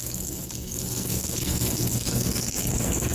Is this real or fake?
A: fake